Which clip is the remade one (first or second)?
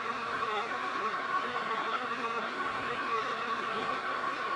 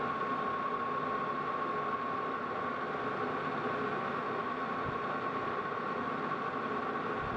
first